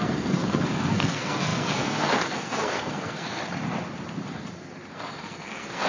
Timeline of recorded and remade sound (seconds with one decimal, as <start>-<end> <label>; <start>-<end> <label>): 0.0-3.4 remade; 3.4-4.9 recorded; 4.9-5.9 remade